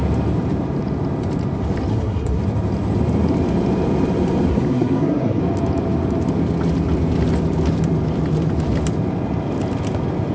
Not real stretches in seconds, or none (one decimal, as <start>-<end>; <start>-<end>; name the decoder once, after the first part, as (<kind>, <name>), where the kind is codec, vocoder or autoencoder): 1.9-2.4 (codec, SNAC); 4.5-5.4